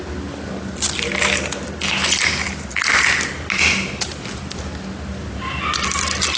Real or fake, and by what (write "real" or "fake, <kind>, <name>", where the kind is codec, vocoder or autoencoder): real